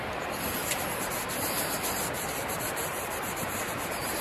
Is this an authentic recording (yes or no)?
no